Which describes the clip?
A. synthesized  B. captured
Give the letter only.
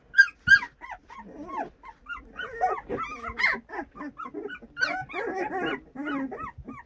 B